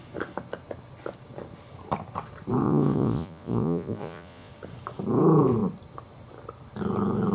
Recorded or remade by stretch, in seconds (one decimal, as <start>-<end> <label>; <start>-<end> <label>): 0.0-2.6 recorded; 2.6-4.5 remade; 4.5-7.3 recorded